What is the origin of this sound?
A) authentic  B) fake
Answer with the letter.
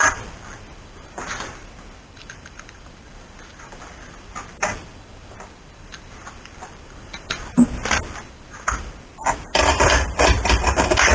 B